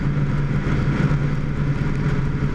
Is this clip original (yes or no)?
yes